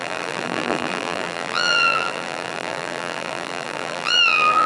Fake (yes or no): yes